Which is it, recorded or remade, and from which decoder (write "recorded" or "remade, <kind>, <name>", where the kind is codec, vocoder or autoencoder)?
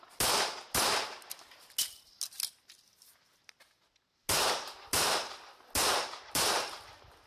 recorded